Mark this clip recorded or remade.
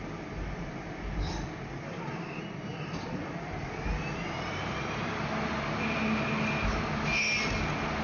recorded